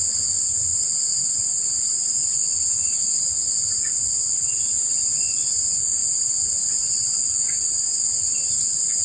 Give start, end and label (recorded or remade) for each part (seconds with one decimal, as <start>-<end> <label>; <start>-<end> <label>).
0.0-9.0 recorded